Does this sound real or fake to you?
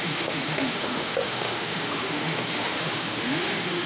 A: fake